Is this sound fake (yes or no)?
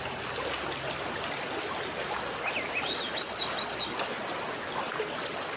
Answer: no